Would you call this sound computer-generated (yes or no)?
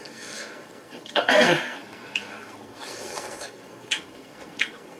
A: yes